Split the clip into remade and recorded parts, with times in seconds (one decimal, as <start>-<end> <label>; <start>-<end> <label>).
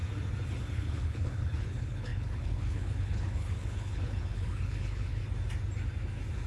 0.0-0.6 recorded; 0.6-5.2 remade; 5.2-6.5 recorded